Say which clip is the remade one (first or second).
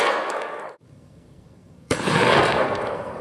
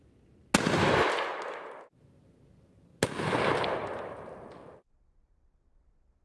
first